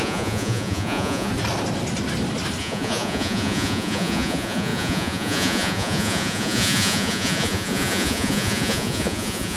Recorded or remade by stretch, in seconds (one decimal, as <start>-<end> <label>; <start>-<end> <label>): 0.0-1.3 remade; 1.3-2.6 recorded; 2.6-9.6 remade